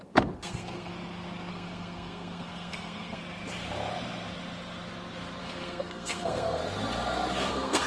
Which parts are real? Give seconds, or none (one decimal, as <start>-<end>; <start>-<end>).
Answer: 0.9-1.5; 3.2-5.4; 6.6-7.5